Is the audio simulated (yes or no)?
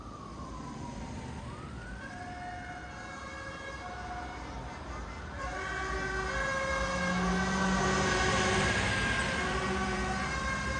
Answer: no